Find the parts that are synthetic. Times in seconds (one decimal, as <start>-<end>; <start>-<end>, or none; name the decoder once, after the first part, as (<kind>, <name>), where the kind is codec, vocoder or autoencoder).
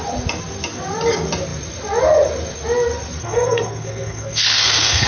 3.2-5.1 (codec, SNAC)